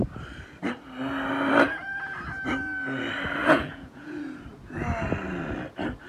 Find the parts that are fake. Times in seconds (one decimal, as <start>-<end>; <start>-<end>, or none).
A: 3.4-4.2